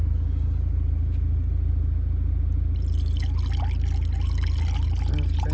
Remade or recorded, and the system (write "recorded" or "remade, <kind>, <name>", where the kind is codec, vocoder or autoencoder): recorded